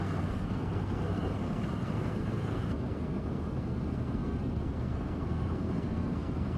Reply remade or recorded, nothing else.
remade